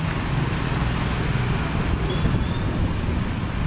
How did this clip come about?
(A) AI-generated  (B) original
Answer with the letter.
B